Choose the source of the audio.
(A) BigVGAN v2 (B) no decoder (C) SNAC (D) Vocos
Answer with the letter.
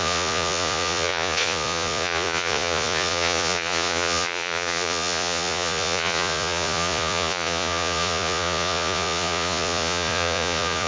D